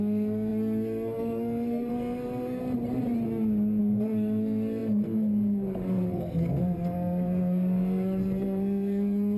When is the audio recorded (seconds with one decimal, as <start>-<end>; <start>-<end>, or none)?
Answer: 2.6-3.8